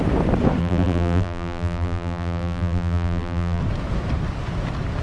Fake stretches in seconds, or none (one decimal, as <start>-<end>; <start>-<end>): 0.6-3.6